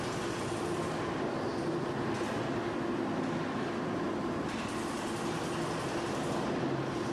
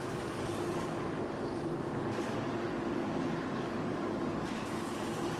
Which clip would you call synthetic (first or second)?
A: second